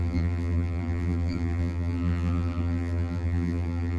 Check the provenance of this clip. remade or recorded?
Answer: remade